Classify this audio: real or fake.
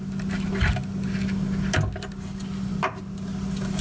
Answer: real